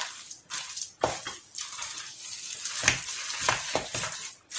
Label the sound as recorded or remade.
recorded